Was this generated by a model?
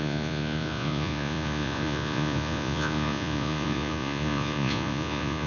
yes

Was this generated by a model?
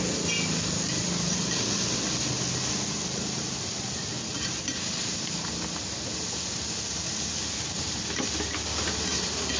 no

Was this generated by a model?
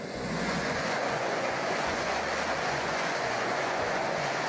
yes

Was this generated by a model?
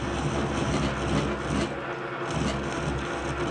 no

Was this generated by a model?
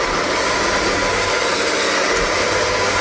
no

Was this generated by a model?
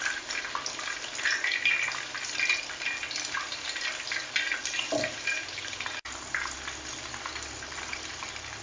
no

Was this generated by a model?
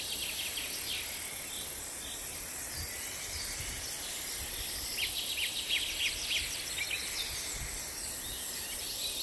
no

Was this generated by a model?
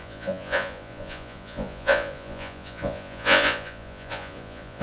yes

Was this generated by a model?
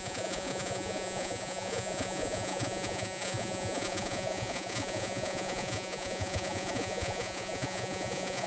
yes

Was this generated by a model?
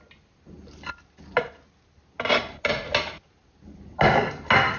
no